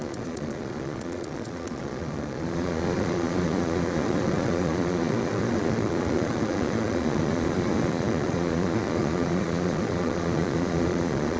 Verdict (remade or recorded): remade